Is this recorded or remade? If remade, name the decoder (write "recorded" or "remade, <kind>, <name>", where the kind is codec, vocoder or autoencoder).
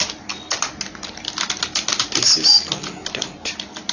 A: recorded